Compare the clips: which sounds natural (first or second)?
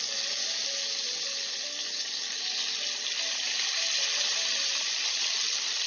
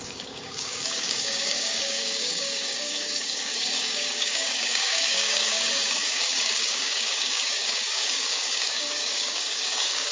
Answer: first